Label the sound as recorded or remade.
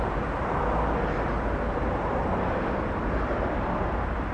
recorded